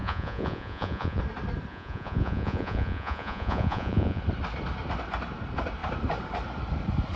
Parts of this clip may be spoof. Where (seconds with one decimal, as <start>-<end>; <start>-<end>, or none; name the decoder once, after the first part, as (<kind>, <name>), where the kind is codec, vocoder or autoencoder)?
0.0-1.2 (vocoder, Vocos); 1.7-4.2